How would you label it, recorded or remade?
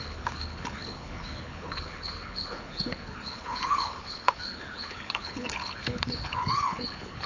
remade